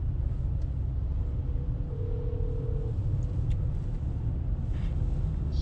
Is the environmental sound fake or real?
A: real